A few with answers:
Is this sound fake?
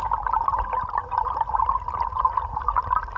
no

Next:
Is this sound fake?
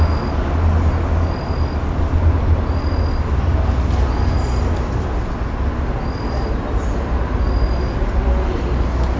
no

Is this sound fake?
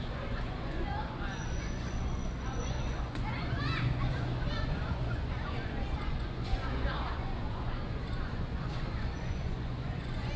yes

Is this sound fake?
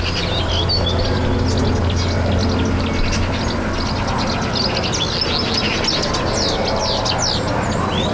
no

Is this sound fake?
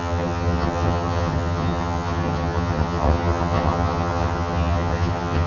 yes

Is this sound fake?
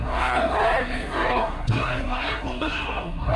yes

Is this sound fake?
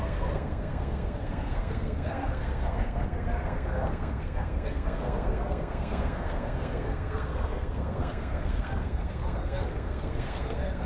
yes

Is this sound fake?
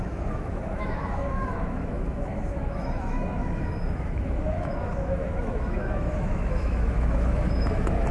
yes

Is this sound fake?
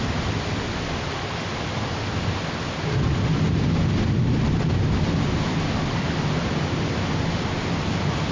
no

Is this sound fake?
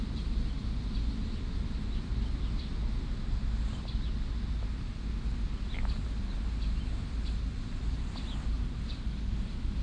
no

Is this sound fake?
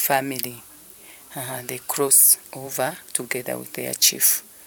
yes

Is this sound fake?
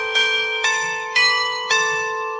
yes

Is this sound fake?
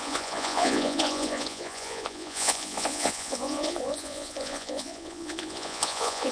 yes